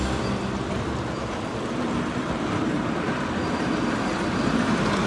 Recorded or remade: remade